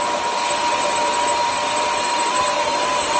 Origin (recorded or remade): remade